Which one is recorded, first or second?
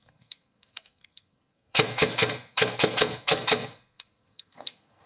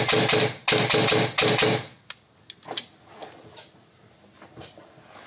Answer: second